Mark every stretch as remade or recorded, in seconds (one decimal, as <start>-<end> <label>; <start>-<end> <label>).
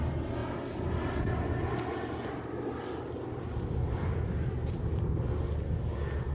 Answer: 0.0-6.3 recorded